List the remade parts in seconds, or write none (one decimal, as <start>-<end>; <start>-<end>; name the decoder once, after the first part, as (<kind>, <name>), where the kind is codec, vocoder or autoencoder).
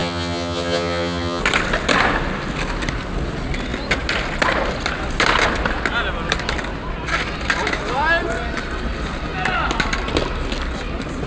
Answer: 0.0-1.4 (vocoder, HiFi-GAN)